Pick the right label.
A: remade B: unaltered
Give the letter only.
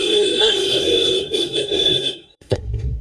A